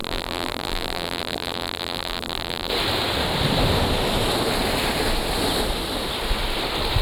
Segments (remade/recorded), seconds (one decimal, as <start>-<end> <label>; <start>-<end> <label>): 0.0-2.7 remade; 2.7-7.0 recorded